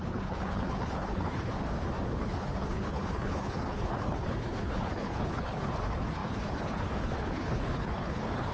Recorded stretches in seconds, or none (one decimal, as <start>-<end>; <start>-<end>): 1.5-2.2